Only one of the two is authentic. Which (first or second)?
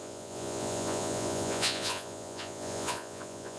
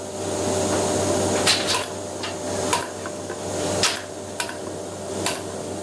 second